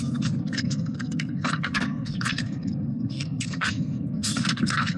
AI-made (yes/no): yes